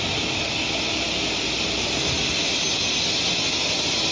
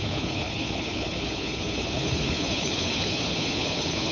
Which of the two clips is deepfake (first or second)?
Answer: second